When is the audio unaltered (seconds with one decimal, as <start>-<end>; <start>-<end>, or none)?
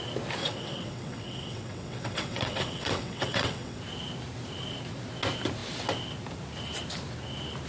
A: 0.0-0.4; 3.8-7.7